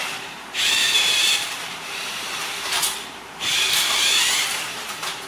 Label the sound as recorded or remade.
remade